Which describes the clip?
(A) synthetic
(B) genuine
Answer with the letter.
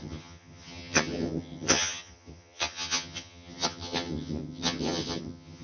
A